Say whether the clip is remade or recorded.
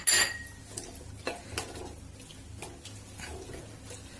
recorded